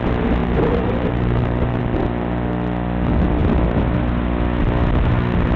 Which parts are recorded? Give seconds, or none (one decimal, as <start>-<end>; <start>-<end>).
0.0-0.4; 1.8-5.6